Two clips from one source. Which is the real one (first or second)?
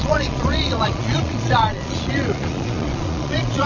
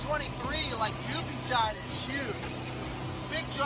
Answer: second